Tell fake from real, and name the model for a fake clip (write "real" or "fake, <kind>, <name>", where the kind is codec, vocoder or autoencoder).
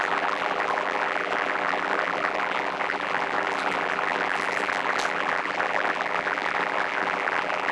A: fake, vocoder, BigVGAN v2